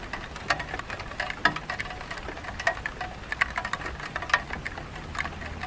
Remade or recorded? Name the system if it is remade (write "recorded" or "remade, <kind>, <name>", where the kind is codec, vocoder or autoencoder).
recorded